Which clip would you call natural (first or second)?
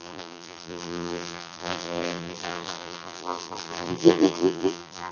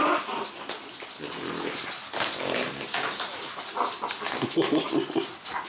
second